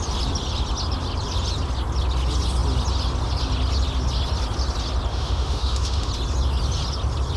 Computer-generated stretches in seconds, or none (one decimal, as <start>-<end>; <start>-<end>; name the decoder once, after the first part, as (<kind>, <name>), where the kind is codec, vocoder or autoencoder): 5.1-6.1 (autoencoder, DAC-VAE)